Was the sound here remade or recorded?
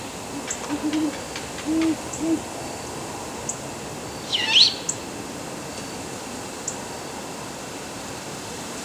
recorded